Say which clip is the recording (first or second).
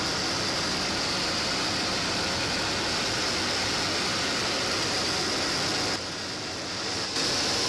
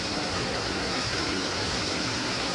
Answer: first